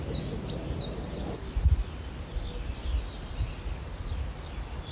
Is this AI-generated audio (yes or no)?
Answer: no